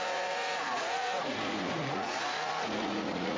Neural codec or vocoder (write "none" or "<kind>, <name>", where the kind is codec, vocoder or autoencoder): vocoder, Vocos